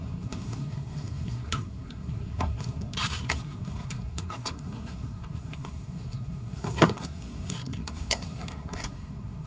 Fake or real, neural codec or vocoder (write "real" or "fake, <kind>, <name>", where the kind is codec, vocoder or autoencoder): fake, codec, SNAC